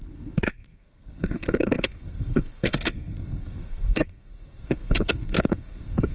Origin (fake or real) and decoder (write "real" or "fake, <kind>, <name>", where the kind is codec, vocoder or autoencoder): fake, codec, SNAC